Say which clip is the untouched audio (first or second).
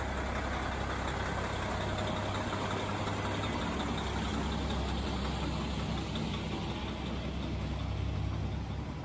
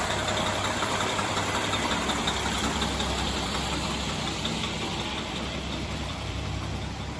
first